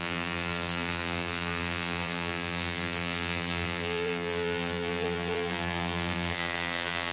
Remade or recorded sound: remade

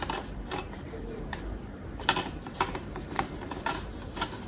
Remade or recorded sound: remade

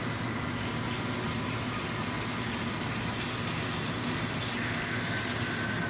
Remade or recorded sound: recorded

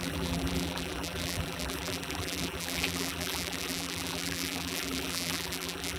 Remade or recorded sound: remade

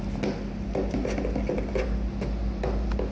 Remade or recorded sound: recorded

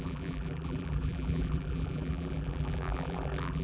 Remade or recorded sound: remade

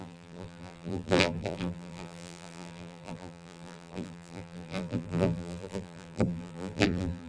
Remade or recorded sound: remade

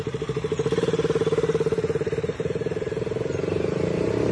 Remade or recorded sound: remade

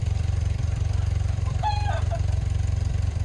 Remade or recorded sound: remade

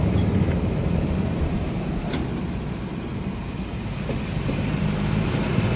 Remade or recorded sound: remade